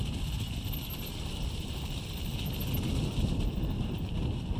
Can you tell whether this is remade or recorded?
remade